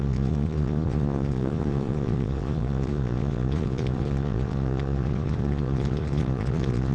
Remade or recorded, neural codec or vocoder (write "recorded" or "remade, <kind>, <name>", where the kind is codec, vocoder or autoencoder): remade, vocoder, Vocos